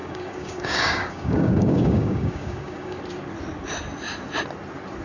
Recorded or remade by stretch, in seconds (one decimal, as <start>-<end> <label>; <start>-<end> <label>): 0.0-3.0 remade; 3.0-5.0 recorded